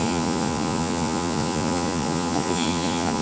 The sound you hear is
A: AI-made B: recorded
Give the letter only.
A